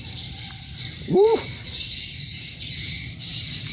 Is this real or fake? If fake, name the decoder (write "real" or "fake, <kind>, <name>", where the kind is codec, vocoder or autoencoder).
fake, vocoder, BigVGAN v2